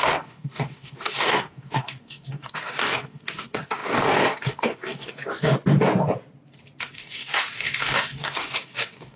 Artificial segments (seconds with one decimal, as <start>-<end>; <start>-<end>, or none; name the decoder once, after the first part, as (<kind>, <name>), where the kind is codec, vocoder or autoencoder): 0.0-5.5 (codec, DAC); 6.8-9.2